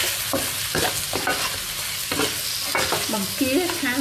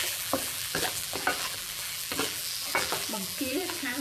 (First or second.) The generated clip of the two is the second